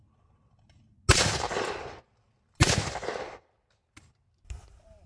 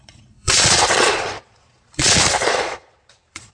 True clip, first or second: first